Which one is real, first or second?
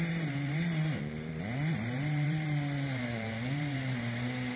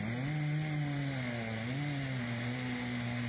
second